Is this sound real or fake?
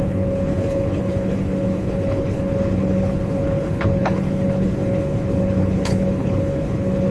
fake